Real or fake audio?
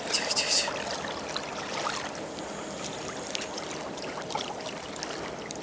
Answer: real